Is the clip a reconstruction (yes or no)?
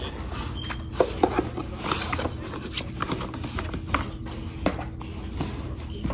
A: no